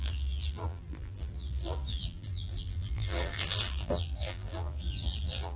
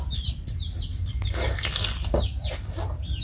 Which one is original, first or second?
second